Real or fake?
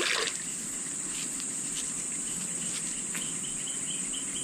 real